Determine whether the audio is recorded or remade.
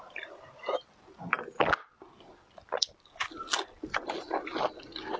recorded